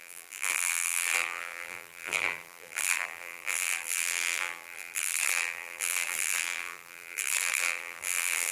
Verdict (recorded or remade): remade